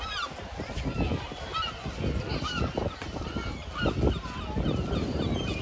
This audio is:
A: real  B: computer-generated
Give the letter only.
A